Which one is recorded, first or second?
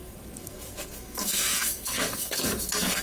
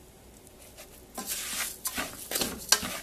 second